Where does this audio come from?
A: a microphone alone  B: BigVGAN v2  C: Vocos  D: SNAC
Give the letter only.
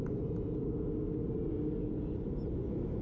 A